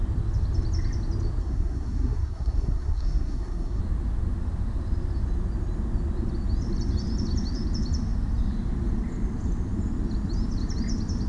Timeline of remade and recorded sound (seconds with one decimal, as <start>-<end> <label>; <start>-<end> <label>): 0.0-1.4 recorded; 1.4-3.8 remade; 3.8-11.3 recorded